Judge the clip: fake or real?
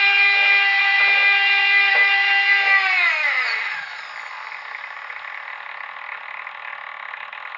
real